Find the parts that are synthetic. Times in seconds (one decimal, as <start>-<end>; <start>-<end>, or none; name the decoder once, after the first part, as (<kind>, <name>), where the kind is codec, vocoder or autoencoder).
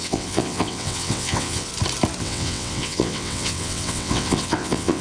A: 0.0-1.7 (vocoder, WaveNeXt); 2.2-5.0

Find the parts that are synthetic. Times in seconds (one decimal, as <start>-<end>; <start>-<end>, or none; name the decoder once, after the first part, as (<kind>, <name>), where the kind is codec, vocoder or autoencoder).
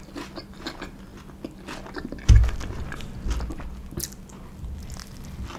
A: none